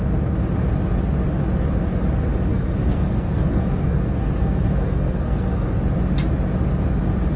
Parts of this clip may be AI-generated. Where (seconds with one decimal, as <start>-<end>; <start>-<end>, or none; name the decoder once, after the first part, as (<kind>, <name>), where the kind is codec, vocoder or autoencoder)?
2.5-5.7 (codec, SNAC)